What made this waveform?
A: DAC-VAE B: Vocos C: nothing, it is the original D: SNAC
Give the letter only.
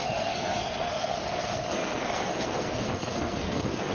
D